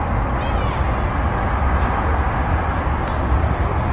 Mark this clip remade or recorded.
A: recorded